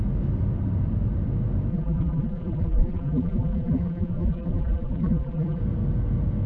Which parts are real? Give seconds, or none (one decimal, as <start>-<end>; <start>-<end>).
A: 0.0-1.7; 5.6-6.5